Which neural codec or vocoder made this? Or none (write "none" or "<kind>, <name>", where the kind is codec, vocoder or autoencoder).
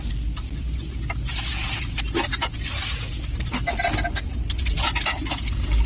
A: none